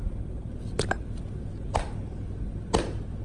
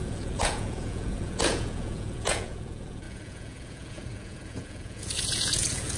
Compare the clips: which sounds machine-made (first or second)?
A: second